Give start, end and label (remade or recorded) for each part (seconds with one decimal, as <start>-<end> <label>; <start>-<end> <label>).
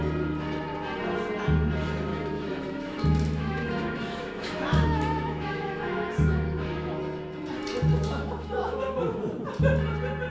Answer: 0.0-2.1 recorded; 2.1-7.0 remade; 7.0-7.9 recorded; 7.9-9.2 remade; 9.2-10.3 recorded